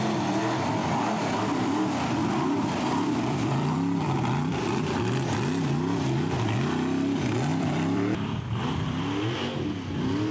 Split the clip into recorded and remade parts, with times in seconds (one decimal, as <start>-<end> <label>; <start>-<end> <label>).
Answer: 0.0-0.8 recorded; 0.8-1.4 remade; 1.4-2.2 recorded; 2.2-5.0 remade; 5.0-7.5 recorded; 7.5-9.0 remade; 9.0-10.3 recorded